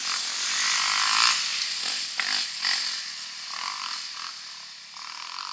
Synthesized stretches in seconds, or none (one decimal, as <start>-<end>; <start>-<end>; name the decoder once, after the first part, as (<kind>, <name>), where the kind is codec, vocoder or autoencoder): none